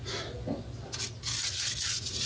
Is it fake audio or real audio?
real